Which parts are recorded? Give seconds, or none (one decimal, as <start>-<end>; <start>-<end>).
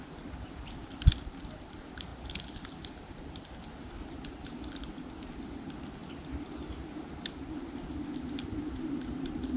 0.0-9.6